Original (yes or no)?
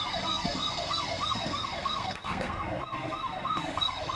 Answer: no